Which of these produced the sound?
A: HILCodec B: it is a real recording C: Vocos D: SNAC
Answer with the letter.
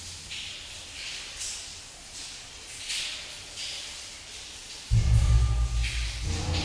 B